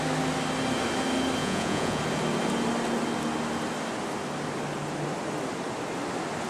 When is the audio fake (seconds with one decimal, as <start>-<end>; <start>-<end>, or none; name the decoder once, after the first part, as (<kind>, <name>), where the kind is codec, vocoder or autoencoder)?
1.4-2.0 (vocoder, Vocos)